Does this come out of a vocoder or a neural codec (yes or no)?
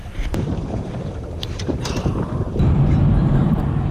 yes